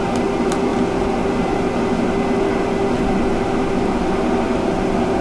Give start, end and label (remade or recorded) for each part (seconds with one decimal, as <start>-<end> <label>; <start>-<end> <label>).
0.0-5.2 recorded